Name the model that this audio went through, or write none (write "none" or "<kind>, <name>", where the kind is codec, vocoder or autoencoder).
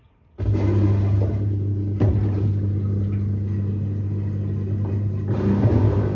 none